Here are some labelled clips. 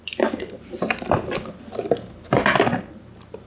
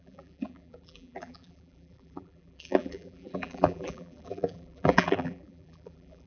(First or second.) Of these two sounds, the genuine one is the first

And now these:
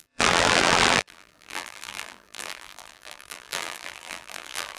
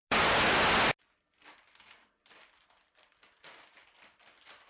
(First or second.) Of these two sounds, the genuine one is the second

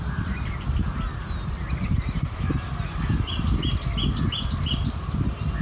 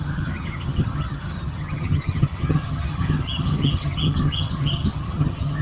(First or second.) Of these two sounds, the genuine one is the first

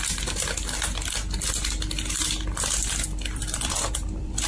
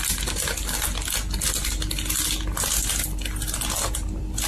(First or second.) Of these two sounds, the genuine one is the second